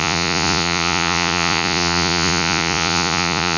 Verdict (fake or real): fake